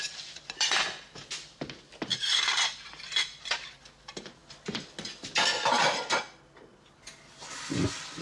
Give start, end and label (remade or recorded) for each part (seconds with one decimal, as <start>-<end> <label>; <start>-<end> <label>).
0.0-8.2 recorded